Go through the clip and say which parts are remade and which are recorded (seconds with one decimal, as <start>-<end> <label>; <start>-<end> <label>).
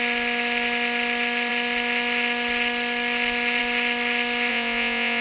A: 0.0-4.5 recorded; 4.5-5.2 remade